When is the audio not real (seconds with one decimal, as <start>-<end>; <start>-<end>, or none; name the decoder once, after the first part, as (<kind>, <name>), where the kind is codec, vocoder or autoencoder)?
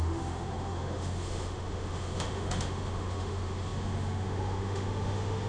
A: 0.0-5.5 (autoencoder, DAC-VAE)